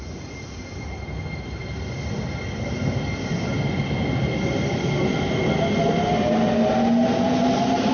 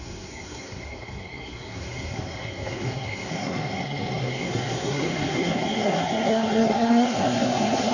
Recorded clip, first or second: first